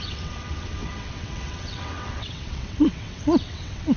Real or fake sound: fake